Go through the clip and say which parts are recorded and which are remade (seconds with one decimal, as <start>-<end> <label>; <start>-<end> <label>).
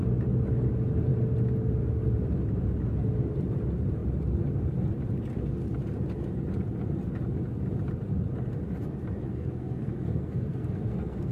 0.0-9.3 recorded; 9.3-11.3 remade